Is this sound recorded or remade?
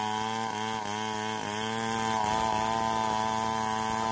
recorded